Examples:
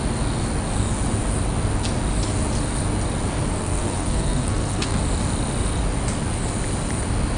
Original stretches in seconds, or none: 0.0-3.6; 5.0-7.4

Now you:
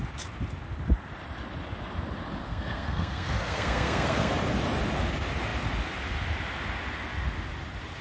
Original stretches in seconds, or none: 0.0-2.4; 4.3-8.0

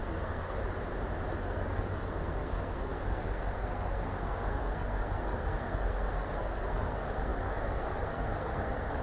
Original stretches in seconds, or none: 0.6-1.3